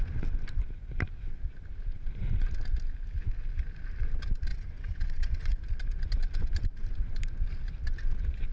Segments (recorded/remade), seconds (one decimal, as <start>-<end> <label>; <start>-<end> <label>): 0.0-4.5 recorded; 4.5-5.6 remade; 5.6-8.5 recorded